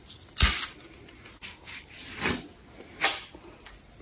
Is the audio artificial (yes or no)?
no